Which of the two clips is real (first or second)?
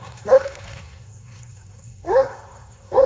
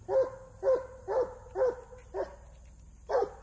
second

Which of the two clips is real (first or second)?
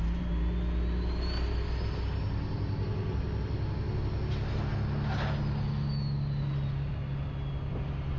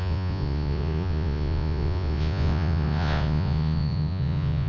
first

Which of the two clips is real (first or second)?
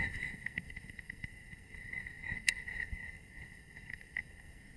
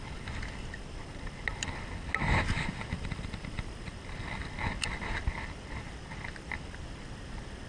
second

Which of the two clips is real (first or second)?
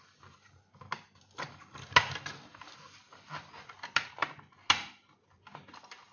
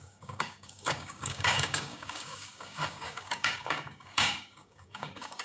first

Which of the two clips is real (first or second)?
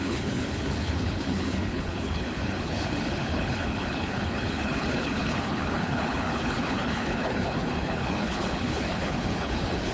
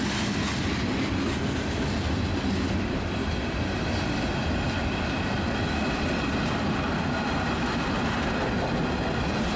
second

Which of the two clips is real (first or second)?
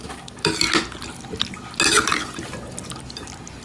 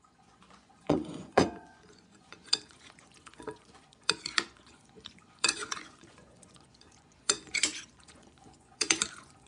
first